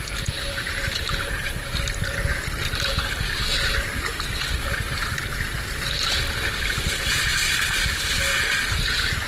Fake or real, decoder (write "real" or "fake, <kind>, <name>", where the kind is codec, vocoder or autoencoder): fake, vocoder, BigVGAN v2